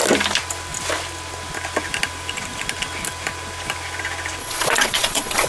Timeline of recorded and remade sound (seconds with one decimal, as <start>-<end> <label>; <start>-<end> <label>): 0.0-4.4 recorded; 4.4-5.5 remade